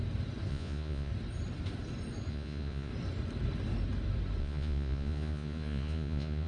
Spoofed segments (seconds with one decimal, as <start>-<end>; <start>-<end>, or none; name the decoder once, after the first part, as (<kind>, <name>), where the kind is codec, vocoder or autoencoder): 0.5-1.1 (vocoder, Vocos); 2.3-2.9; 4.4-6.5